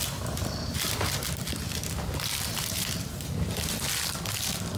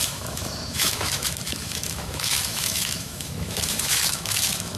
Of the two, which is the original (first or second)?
first